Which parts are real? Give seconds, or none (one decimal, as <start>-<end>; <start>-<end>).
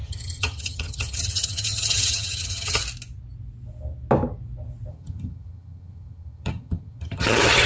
2.8-4.9